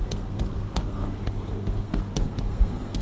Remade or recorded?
remade